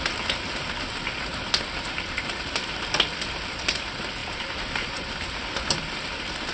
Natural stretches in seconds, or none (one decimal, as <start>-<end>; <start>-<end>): 0.0-6.5